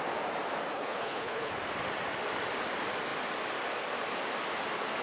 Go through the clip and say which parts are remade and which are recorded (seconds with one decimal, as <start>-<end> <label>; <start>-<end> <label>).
0.0-0.7 recorded; 0.7-1.5 remade; 1.5-5.0 recorded